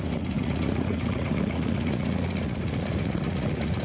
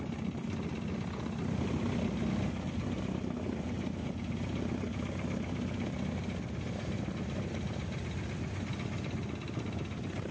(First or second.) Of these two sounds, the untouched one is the second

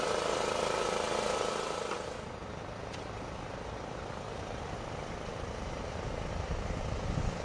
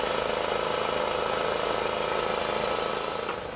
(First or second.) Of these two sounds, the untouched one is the second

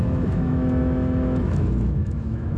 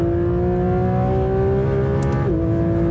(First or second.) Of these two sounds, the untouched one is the second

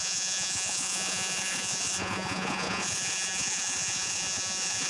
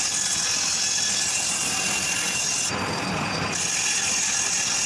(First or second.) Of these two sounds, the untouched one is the second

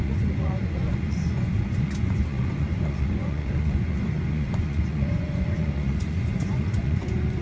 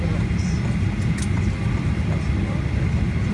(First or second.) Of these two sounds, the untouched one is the second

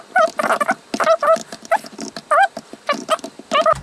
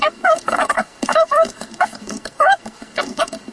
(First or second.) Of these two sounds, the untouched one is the first